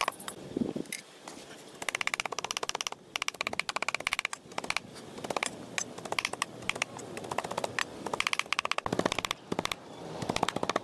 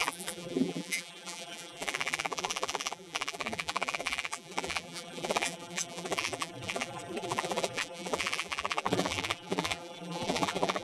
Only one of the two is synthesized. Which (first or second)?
second